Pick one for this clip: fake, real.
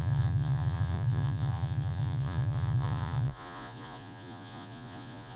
fake